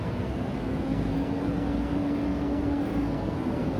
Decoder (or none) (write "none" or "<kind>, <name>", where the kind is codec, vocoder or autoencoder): codec, SNAC